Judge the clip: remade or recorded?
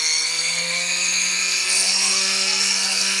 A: remade